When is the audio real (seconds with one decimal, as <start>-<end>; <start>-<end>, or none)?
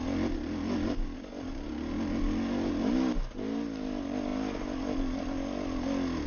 0.0-6.3